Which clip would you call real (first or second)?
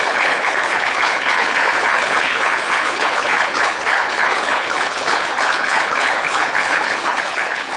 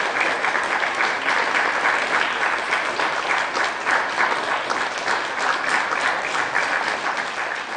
second